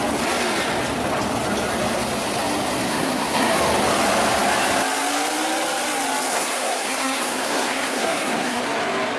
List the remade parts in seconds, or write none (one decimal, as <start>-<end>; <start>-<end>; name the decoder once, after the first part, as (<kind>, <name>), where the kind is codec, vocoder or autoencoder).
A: 2.9-3.6 (codec, SNAC); 6.3-8.6